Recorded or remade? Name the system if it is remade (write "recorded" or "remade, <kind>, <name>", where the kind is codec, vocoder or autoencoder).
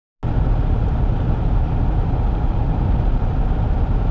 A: recorded